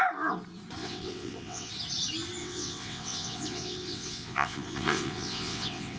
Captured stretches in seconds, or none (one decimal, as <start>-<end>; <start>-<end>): 0.0-0.8; 1.7-2.4